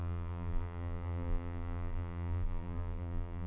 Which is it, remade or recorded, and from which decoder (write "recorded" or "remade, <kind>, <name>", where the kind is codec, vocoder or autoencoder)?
remade, vocoder, BigVGAN v2